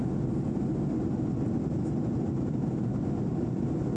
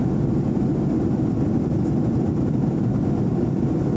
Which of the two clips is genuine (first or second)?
first